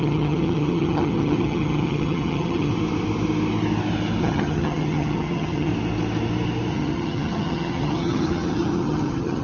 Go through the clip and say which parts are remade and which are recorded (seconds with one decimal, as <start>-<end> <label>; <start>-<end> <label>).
0.0-2.7 remade; 2.7-4.2 recorded; 4.2-5.7 remade; 5.7-6.7 recorded; 6.7-9.4 remade